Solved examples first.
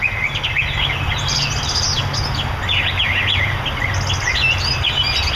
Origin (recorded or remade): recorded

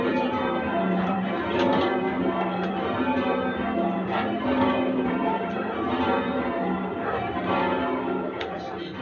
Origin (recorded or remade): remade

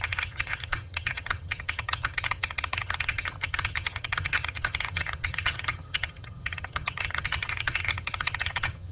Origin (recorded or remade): remade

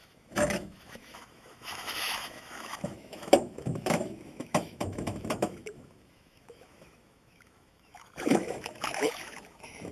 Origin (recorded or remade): remade